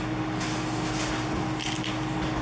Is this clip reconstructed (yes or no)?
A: no